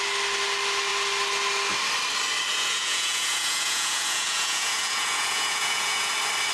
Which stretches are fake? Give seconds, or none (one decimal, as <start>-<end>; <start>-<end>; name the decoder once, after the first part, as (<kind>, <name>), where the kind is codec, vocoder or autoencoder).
2.5-6.1 (vocoder, Vocos)